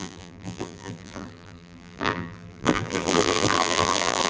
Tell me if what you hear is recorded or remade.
remade